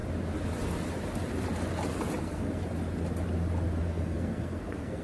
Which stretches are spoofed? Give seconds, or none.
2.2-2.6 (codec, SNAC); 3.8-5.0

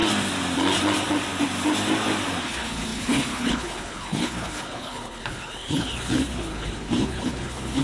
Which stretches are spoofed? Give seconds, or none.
2.4-7.8 (codec, HILCodec)